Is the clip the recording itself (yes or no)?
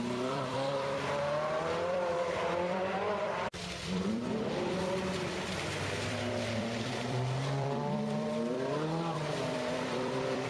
no